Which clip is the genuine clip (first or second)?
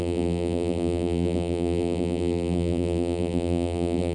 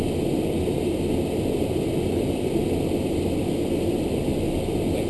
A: second